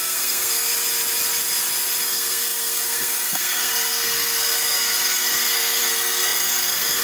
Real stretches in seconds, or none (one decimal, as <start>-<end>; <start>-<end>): 0.7-2.0